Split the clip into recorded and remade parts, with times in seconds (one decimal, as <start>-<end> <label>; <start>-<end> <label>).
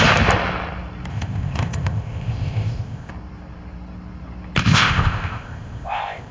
0.0-1.1 recorded; 1.1-3.1 remade; 3.1-4.6 recorded; 4.6-6.3 remade